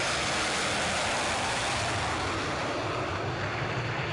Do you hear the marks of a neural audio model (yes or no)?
no